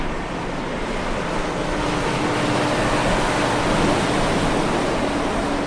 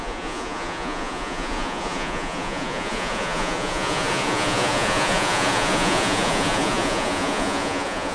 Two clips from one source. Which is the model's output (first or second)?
second